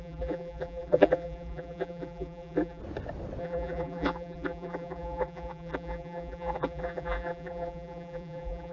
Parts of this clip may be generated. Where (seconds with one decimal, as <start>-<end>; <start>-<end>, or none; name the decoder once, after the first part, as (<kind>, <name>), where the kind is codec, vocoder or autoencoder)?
0.0-2.8 (vocoder, BigVGAN v2); 3.4-8.7